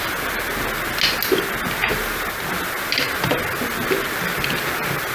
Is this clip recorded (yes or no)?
yes